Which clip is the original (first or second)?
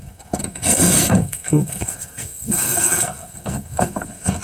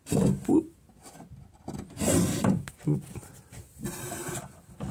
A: second